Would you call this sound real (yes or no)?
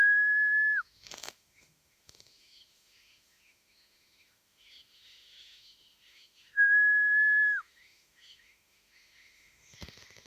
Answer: no